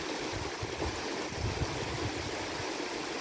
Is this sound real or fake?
real